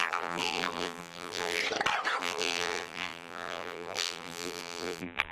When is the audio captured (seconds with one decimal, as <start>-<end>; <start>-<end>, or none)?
1.6-2.2